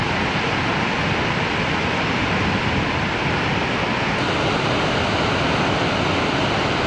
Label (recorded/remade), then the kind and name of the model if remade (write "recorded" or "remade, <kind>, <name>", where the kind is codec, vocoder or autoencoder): recorded